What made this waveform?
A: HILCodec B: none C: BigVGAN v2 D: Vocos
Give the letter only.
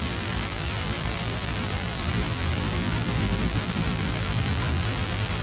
C